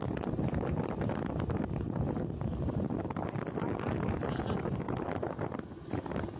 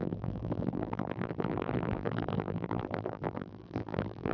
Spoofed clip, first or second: second